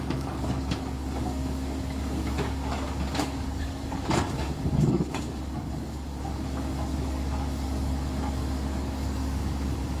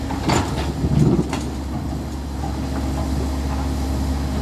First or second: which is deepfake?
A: first